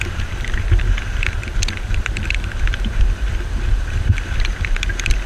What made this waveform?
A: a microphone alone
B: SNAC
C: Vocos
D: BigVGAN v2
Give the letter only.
D